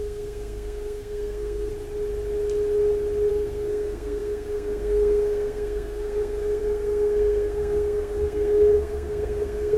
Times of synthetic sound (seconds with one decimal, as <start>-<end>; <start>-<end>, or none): 0.0-1.7; 3.3-9.8